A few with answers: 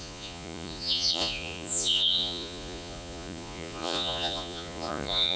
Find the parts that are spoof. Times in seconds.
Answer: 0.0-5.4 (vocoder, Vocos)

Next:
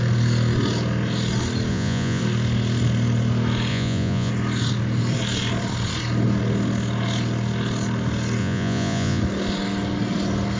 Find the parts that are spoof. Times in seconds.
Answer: 1.7-2.2 (vocoder, Vocos); 3.7-4.3; 8.4-9.2

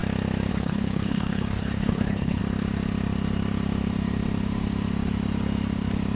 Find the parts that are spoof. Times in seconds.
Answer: 0.5-2.4 (codec, HILCodec)

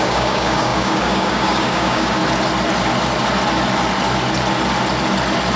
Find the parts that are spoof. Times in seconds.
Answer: 0.0-2.2 (codec, DAC)

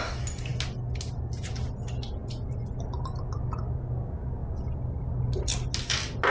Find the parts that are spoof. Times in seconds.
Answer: none

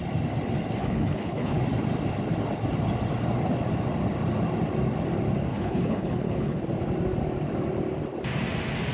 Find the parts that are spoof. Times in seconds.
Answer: 0.8-1.6 (codec, HILCodec); 5.5-6.6

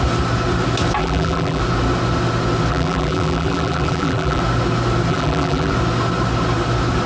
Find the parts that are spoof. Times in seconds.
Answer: 1.0-1.6 (vocoder, BigVGAN v2); 2.7-4.4; 5.1-5.7

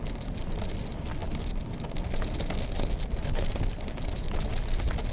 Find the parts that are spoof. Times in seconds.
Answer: none